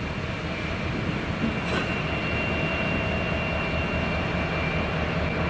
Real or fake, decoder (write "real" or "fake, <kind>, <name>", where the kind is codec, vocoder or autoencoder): real